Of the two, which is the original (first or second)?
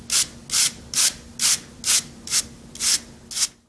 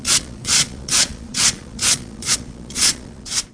first